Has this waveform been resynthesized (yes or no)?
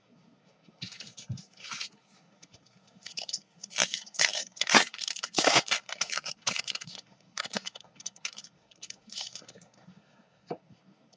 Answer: yes